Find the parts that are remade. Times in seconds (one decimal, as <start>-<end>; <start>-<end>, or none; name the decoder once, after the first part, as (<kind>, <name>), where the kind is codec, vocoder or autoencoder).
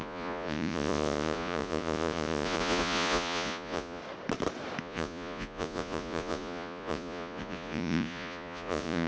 0.0-4.0 (vocoder, Vocos); 4.8-9.1